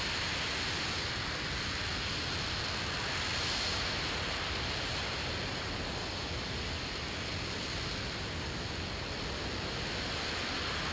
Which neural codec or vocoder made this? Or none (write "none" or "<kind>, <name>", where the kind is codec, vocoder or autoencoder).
none